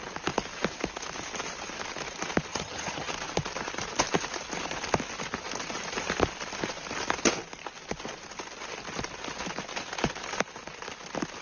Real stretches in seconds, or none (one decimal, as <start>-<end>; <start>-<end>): 0.0-2.5; 3.1-11.4